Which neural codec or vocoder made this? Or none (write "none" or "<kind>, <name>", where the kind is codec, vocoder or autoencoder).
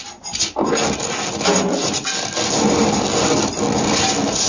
none